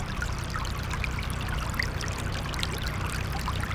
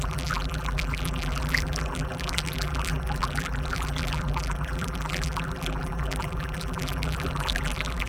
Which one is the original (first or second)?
first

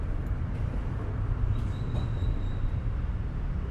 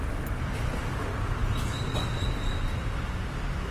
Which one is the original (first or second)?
second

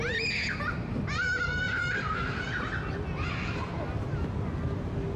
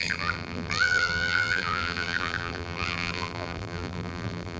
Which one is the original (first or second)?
first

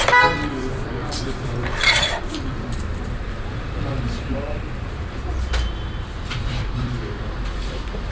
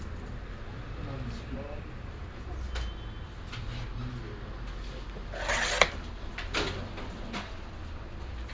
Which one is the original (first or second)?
second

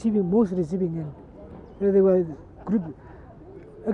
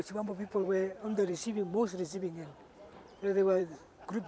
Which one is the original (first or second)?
first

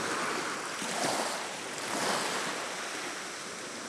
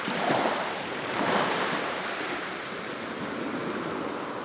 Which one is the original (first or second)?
first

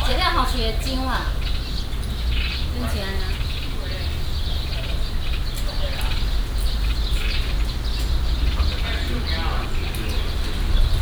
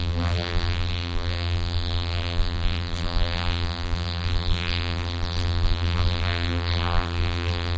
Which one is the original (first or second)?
first